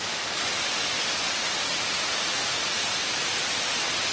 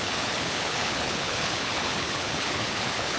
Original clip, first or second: first